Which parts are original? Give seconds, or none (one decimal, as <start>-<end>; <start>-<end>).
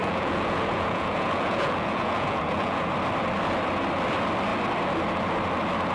2.9-5.9